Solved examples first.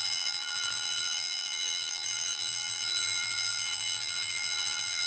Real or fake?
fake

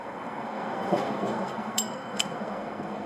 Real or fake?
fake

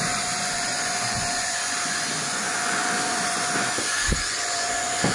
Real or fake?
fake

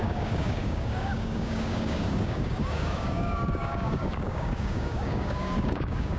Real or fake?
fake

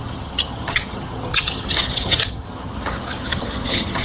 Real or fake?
fake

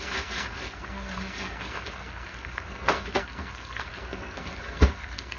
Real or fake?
fake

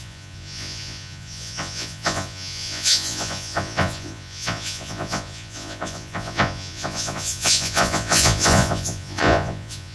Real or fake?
fake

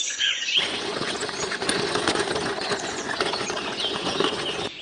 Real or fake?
fake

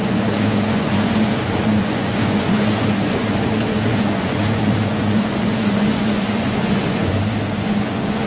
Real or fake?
fake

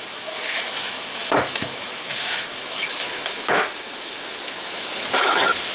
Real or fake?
fake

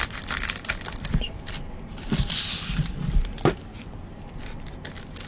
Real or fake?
real